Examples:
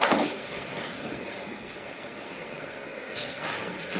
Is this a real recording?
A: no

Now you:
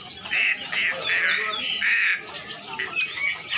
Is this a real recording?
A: yes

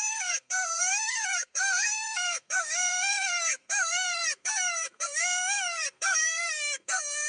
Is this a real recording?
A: no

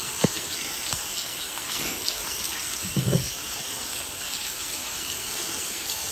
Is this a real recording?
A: no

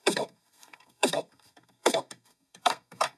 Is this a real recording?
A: no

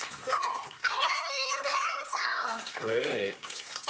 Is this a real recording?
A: no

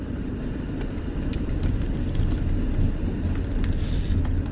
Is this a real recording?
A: yes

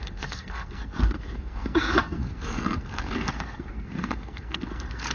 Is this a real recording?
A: no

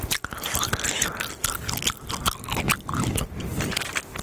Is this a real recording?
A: yes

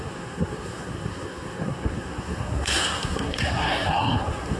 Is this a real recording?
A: no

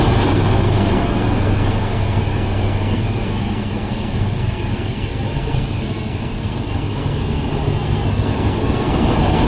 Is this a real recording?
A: no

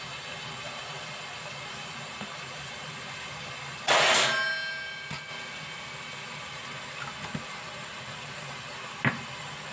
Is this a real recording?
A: yes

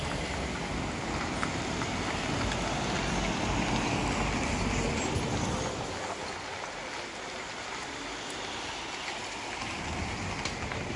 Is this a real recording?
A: yes